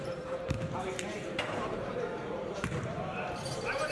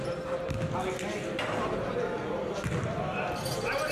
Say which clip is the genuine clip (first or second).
second